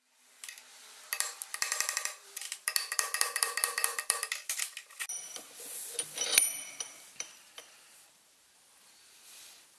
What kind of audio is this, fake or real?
fake